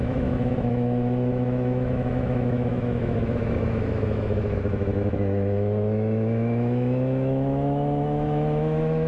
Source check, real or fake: fake